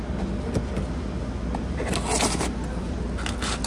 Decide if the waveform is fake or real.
real